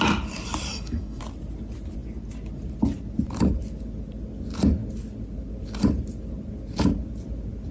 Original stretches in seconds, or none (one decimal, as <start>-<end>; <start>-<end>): 0.0-0.7; 1.2-7.7